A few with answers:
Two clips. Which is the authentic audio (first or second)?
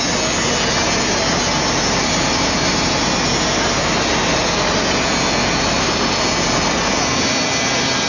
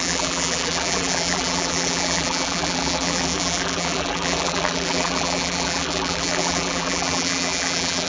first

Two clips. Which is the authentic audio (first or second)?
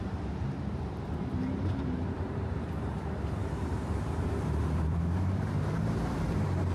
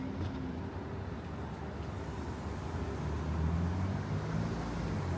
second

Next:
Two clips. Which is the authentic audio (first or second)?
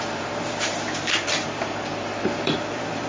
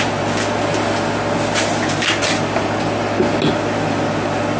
second